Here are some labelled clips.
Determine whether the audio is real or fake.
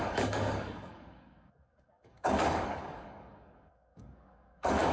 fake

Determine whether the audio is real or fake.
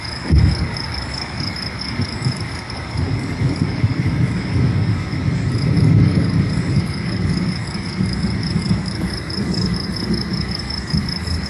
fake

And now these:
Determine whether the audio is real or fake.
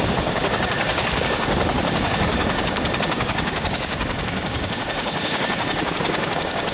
fake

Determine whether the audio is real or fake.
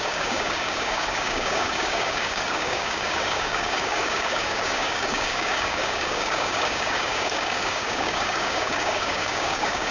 fake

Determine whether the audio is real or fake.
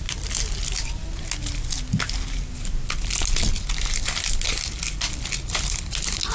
real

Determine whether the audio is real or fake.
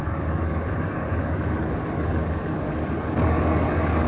fake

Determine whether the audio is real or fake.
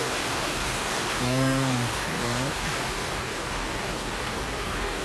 fake